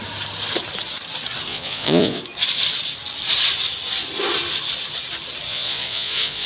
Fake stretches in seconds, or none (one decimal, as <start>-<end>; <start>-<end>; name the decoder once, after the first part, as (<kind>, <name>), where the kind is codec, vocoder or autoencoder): 1.5-2.2 (vocoder, Vocos); 5.5-6.5